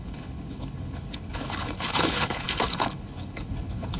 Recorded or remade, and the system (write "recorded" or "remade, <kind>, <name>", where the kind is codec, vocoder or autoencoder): remade, codec, HILCodec